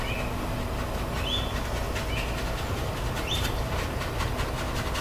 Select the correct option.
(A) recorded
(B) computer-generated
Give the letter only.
A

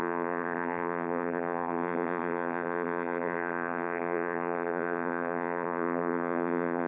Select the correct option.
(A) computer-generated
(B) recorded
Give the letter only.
A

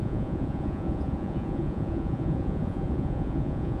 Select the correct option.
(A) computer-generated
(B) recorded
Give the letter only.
A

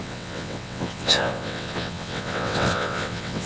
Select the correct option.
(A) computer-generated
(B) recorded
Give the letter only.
A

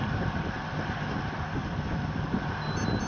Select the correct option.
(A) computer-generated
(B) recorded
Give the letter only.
B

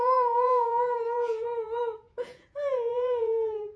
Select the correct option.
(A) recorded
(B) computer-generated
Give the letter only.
B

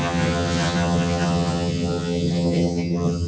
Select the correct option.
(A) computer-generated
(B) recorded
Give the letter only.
A